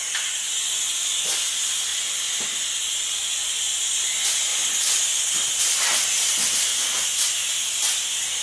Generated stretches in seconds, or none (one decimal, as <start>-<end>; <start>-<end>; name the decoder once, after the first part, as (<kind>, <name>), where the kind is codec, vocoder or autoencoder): none

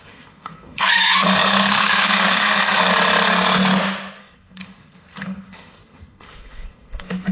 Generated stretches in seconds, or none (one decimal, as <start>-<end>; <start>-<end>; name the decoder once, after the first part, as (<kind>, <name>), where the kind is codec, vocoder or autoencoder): 0.0-2.9 (codec, SNAC); 4.2-7.3